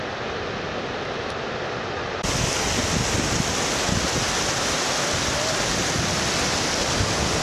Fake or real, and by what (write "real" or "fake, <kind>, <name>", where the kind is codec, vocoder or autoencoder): real